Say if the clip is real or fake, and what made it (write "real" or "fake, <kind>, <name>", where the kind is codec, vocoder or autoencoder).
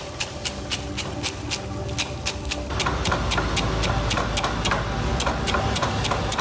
real